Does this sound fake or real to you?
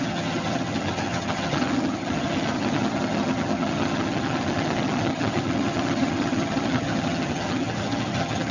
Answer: fake